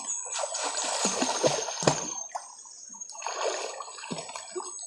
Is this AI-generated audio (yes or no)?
no